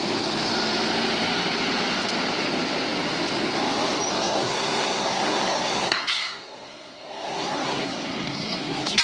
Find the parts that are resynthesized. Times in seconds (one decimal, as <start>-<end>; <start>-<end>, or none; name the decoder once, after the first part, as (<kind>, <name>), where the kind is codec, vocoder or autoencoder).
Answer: 4.1-9.0 (codec, SNAC)